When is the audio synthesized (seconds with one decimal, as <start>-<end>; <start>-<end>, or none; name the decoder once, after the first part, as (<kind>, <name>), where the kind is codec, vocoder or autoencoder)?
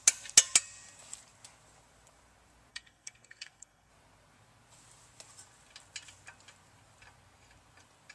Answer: 2.7-3.9 (codec, SNAC)